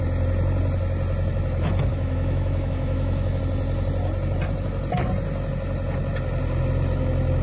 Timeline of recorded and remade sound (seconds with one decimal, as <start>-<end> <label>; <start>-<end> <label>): 0.0-1.9 recorded; 1.9-3.4 remade; 3.4-7.4 recorded